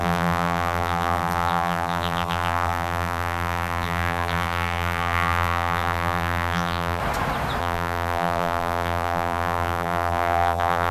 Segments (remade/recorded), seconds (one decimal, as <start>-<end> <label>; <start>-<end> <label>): 0.0-7.0 remade; 7.0-7.6 recorded; 7.6-10.9 remade